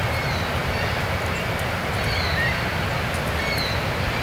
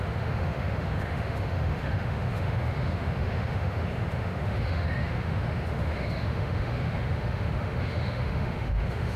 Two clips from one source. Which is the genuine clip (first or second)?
first